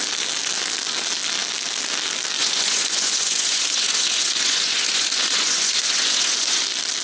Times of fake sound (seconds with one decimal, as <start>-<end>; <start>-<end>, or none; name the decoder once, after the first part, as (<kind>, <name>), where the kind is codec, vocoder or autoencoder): 2.4-6.6 (vocoder, Vocos)